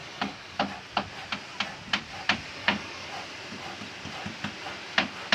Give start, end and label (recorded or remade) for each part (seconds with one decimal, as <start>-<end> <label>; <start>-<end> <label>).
0.0-0.6 remade; 0.6-2.6 recorded; 2.6-3.1 remade; 3.1-5.3 recorded